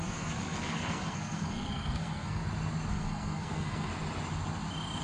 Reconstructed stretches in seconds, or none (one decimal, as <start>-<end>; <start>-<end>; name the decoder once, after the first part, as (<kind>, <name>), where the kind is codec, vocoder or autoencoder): 0.0-2.4 (codec, SNAC); 2.9-3.9